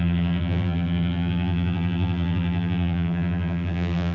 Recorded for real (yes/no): no